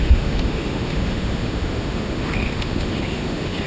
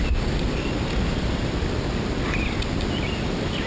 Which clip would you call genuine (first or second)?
second